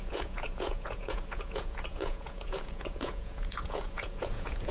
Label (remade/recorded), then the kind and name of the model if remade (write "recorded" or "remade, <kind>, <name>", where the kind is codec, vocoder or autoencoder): remade, vocoder, Vocos